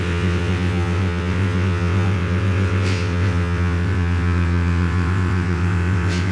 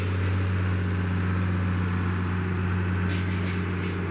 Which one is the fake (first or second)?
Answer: first